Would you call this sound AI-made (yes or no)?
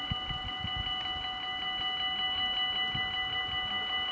no